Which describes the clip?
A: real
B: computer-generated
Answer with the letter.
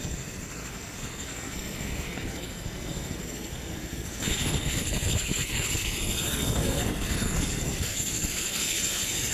B